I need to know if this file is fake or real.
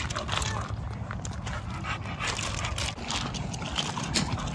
real